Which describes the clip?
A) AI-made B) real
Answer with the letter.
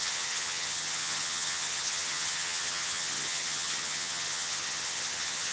A